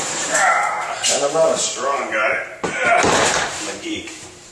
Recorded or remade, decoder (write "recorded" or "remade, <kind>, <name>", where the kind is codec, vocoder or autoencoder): remade, vocoder, BigVGAN v2